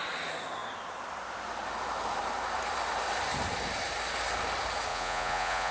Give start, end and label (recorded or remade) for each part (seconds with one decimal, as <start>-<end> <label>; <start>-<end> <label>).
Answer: 0.0-4.9 recorded; 4.9-5.7 remade